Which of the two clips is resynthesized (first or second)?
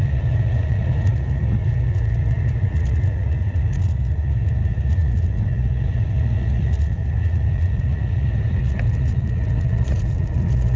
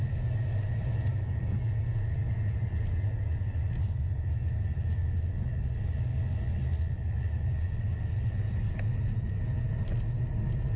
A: first